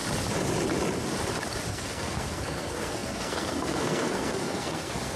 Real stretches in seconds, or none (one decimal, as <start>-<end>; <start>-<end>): 0.0-1.7